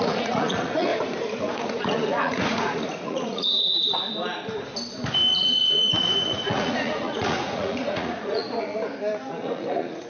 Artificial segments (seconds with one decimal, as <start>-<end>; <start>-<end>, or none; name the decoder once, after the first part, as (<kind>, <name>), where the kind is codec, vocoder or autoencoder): 0.0-0.9 (vocoder, Vocos); 1.4-3.7; 5.3-8.7; 9.3-10.1